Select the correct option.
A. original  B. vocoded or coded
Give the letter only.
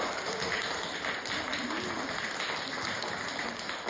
A